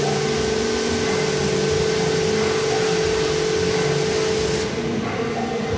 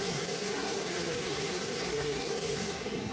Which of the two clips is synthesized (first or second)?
second